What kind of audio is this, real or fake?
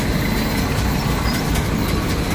real